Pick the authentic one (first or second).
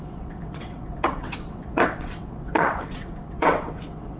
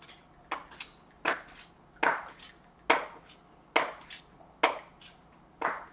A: second